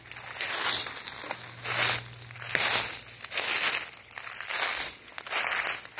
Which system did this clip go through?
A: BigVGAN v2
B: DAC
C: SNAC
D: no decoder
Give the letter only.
D